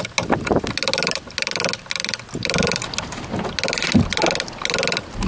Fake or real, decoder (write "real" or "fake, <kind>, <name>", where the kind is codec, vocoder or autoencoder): real